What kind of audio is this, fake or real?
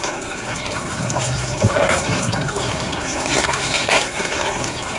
fake